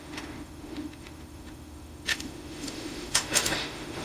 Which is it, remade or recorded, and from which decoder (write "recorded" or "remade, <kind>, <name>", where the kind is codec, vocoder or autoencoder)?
remade, autoencoder, DAC-VAE